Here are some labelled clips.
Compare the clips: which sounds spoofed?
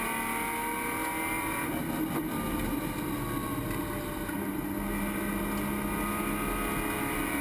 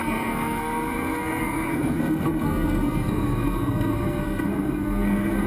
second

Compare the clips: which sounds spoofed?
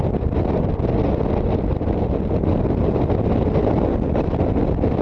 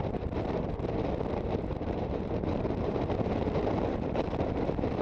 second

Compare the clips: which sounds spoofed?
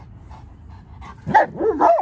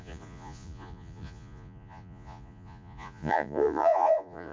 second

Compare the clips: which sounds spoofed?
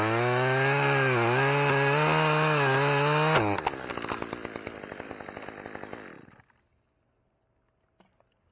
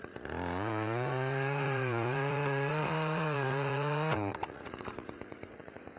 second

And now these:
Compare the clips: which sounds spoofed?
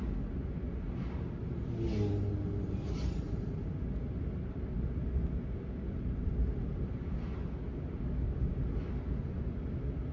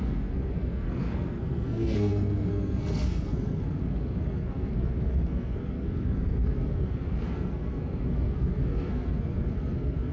second